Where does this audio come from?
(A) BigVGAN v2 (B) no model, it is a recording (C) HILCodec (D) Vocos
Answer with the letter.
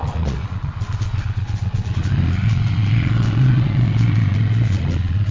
D